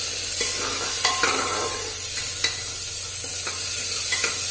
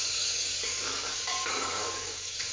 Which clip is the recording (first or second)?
first